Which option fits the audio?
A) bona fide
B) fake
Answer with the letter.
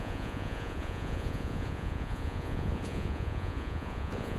B